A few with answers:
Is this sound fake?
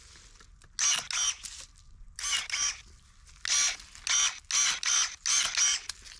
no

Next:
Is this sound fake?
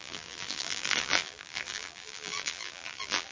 yes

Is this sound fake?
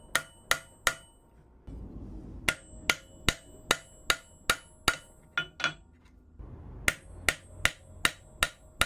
no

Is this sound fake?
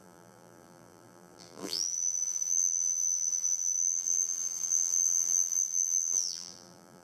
yes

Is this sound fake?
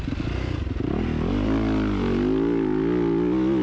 no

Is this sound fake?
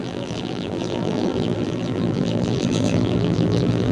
yes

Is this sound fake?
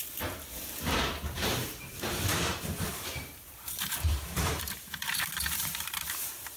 yes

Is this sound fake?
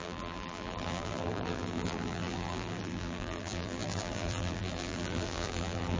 yes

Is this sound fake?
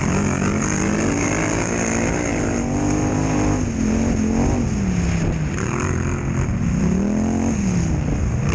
no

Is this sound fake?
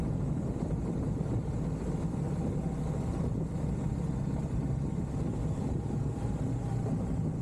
no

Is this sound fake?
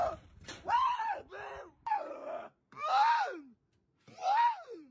yes